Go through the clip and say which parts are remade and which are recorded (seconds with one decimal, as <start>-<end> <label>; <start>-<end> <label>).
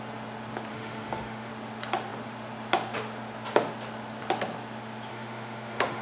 0.0-0.7 recorded; 0.7-1.5 remade; 1.5-5.1 recorded; 5.1-6.0 remade